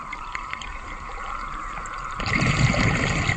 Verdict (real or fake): fake